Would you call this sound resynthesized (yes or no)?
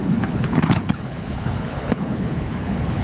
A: yes